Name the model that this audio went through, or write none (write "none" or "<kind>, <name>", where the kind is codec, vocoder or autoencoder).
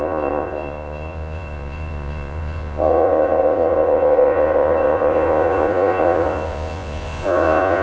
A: vocoder, Vocos